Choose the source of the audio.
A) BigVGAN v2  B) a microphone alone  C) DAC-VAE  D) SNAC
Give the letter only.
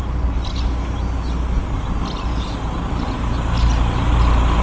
B